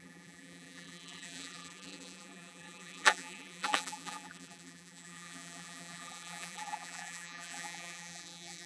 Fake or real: fake